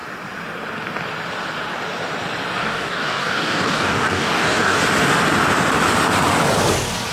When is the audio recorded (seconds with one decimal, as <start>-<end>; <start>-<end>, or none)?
0.0-2.6; 4.8-7.1